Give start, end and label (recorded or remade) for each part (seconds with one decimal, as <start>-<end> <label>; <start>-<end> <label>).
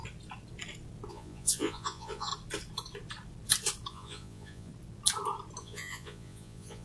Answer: 0.0-1.1 recorded; 1.1-2.3 remade; 2.3-3.9 recorded; 3.9-4.7 remade; 4.7-5.6 recorded; 5.6-6.8 remade